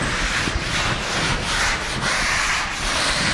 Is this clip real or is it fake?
real